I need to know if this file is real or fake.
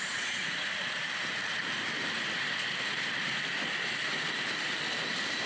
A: real